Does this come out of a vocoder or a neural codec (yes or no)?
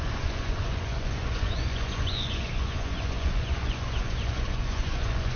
yes